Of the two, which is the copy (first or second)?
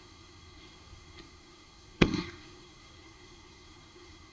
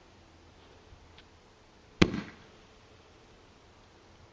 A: first